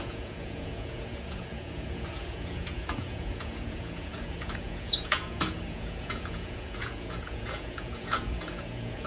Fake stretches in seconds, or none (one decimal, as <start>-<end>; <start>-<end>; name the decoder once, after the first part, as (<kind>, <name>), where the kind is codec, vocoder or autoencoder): 0.0-9.1 (vocoder, Vocos)